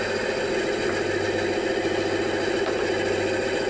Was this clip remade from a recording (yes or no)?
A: no